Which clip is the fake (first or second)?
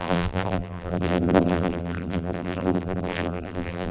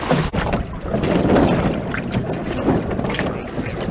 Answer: first